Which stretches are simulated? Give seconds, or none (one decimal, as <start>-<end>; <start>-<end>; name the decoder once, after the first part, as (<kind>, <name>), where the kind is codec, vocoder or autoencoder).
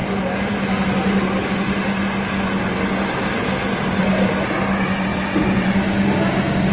none